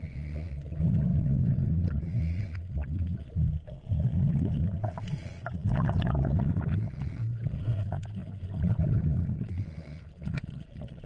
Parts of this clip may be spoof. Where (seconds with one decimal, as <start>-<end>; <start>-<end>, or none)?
0.0-11.1